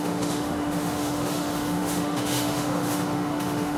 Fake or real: fake